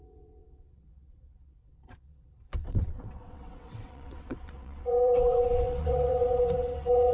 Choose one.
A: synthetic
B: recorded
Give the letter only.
A